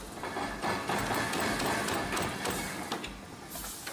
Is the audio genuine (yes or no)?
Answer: yes